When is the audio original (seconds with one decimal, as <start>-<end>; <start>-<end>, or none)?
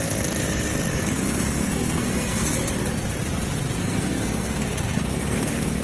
0.0-0.9; 2.7-3.8